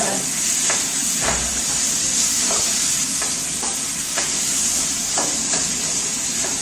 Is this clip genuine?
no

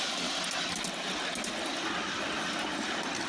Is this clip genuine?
yes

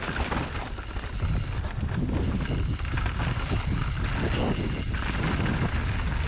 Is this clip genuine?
yes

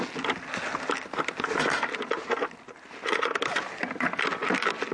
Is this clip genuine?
yes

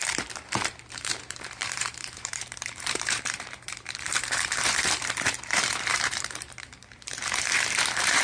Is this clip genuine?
no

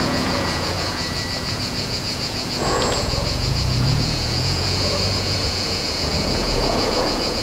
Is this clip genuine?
no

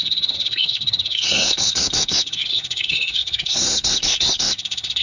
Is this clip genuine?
no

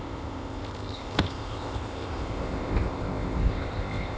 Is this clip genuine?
no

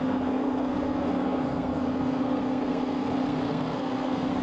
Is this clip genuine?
no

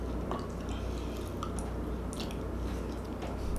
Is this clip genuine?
yes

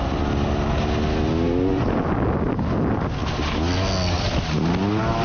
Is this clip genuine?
yes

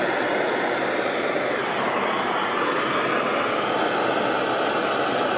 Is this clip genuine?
yes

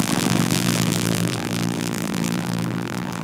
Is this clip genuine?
no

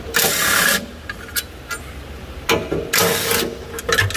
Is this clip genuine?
yes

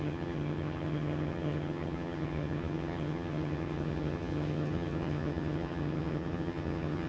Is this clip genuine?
no